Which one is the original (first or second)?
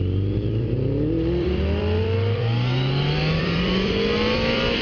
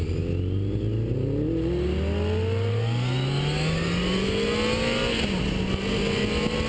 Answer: second